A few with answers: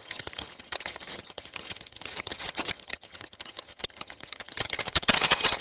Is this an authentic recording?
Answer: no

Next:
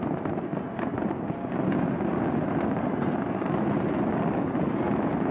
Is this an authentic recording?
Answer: yes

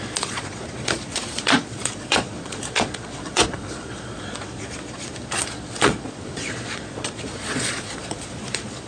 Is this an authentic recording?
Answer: no